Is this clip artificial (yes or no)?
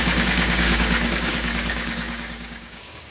yes